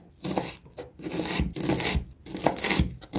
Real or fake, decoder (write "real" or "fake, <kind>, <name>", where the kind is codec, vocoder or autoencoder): real